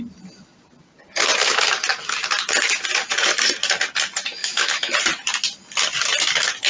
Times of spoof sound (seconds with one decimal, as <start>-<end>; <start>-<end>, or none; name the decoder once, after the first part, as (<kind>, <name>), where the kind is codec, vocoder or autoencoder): 4.4-4.9 (autoencoder, DAC-VAE)